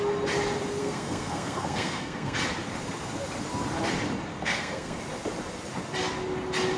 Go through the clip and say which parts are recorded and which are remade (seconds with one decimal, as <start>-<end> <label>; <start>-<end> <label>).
0.0-0.8 recorded; 0.8-2.4 remade; 2.4-4.3 recorded; 4.3-5.0 remade; 5.0-6.8 recorded